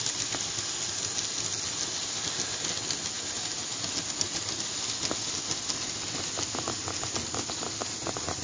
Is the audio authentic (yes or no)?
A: yes